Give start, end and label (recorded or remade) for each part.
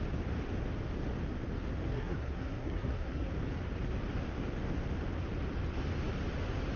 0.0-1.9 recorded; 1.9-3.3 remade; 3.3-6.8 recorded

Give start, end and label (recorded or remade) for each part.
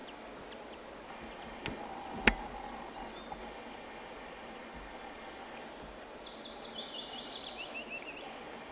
0.0-8.7 recorded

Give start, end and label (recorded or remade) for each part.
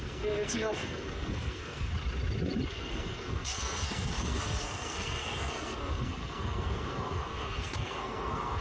0.0-1.9 remade; 1.9-2.7 recorded; 2.7-8.6 remade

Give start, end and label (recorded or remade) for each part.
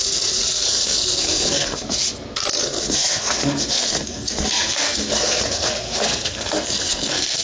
0.0-2.0 remade; 2.0-2.5 recorded; 2.5-7.4 remade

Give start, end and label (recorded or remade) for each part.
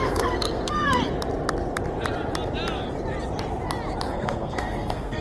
0.0-1.0 remade; 1.0-4.1 recorded; 4.1-5.2 remade